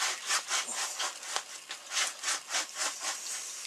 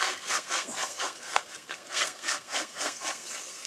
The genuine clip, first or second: first